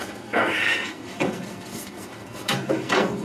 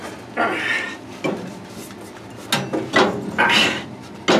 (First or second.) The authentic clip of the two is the second